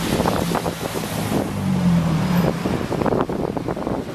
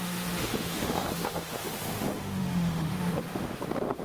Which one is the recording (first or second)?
first